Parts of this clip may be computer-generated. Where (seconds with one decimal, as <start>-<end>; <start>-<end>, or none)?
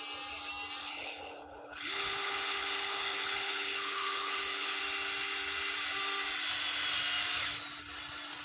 0.8-4.8